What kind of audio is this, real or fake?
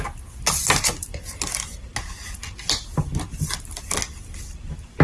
real